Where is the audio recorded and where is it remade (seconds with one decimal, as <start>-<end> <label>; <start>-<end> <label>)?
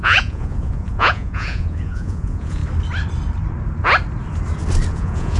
0.0-2.6 remade; 2.6-4.9 recorded; 4.9-5.4 remade